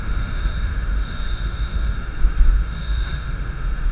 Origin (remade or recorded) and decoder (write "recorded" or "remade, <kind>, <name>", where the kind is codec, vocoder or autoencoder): remade, autoencoder, DAC-VAE